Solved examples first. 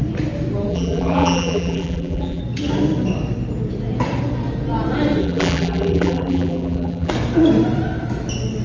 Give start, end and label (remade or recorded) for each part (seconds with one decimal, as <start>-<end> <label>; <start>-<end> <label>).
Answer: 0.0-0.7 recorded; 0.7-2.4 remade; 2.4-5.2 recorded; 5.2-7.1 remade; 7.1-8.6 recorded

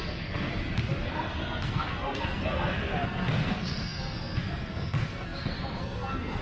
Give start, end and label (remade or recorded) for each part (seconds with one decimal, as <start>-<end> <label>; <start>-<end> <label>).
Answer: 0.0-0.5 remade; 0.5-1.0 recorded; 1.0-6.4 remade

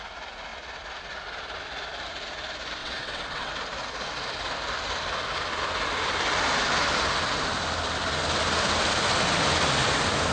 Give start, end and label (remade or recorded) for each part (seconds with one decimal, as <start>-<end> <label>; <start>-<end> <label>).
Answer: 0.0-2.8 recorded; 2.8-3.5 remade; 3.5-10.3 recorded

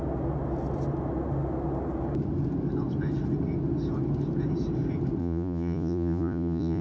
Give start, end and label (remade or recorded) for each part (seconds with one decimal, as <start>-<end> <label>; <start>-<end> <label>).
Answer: 0.0-5.2 recorded; 5.2-6.8 remade

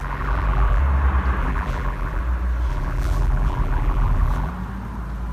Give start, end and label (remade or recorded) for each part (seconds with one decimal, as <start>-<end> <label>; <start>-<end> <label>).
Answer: 0.0-0.8 remade; 0.8-1.4 recorded; 1.4-2.2 remade; 2.2-2.7 recorded; 2.7-4.5 remade; 4.5-5.3 recorded